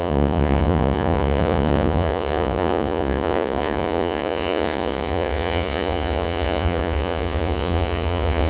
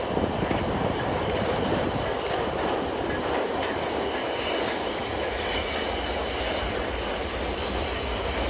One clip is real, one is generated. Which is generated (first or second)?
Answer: first